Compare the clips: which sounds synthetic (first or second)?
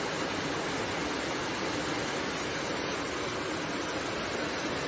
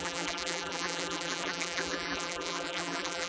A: second